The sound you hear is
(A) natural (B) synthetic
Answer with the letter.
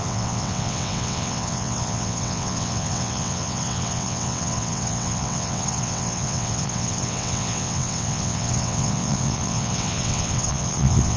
B